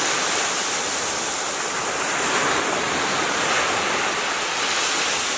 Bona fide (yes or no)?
yes